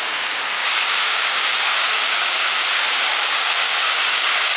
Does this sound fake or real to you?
fake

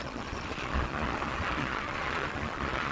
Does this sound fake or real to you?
fake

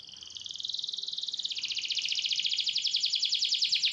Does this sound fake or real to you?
real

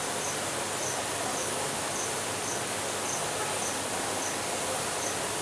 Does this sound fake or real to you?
real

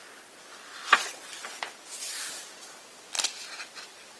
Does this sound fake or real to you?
real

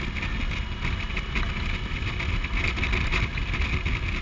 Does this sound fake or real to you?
real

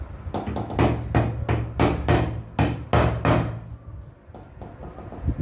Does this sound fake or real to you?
real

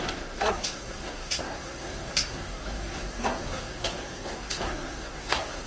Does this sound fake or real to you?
fake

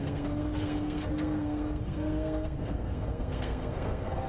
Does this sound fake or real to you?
fake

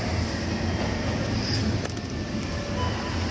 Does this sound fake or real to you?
real